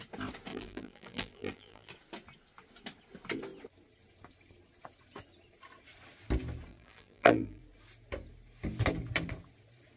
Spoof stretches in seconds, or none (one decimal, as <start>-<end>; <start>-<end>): 0.5-1.9; 6.7-7.6